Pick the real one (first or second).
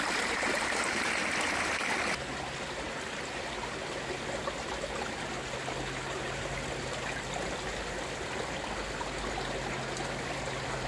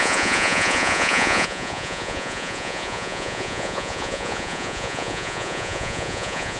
first